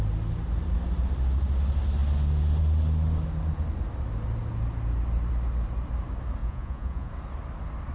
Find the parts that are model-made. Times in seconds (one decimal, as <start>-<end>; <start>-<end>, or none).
6.4-7.1